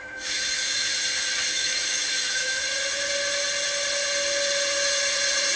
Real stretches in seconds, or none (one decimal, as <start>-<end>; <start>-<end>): 0.9-1.5; 2.6-5.6